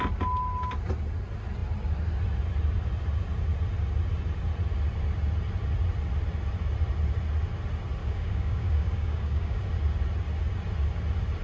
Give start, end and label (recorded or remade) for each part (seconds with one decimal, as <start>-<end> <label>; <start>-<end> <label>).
0.0-8.0 recorded; 8.0-9.6 remade; 9.6-11.4 recorded